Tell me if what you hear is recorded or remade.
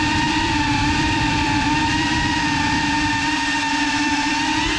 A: remade